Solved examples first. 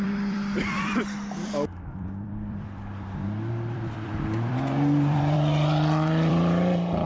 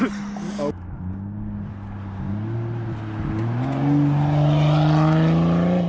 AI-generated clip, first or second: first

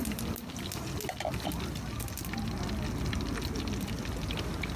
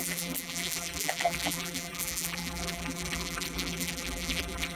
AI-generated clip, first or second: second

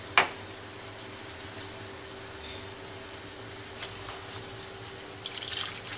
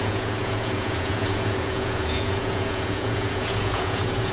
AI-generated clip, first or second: second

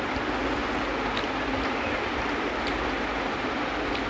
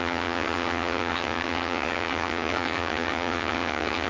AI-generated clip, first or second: second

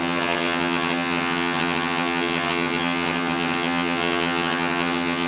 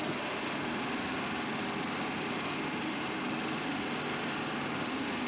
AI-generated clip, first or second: first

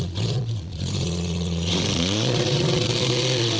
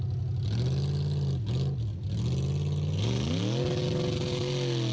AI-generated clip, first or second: first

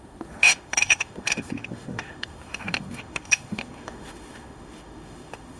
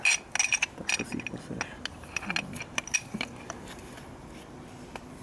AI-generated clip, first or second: first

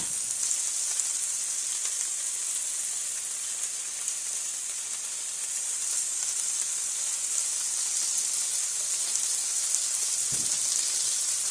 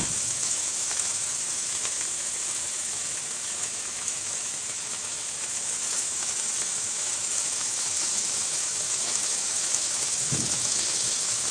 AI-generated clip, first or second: second